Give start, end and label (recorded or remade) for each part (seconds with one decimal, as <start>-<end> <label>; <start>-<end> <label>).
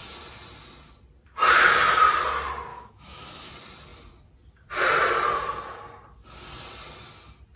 0.0-2.7 recorded; 2.7-3.5 remade; 3.5-7.6 recorded